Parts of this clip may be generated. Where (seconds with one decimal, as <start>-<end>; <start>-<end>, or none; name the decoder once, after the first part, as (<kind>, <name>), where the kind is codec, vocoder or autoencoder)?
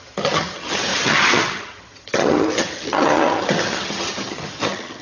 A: 0.0-5.0 (vocoder, HiFi-GAN)